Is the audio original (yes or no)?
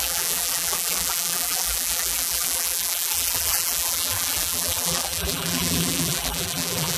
no